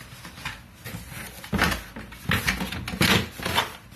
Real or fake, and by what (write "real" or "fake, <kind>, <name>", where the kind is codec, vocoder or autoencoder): real